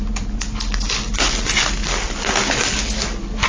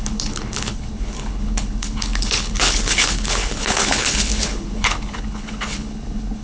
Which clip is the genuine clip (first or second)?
first